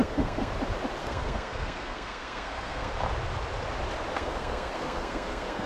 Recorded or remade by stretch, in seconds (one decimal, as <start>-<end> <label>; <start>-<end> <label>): 0.0-0.5 remade; 0.5-1.0 recorded; 1.0-2.9 remade; 2.9-4.1 recorded; 4.1-5.7 remade